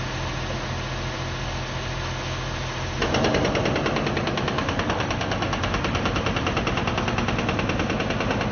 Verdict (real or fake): real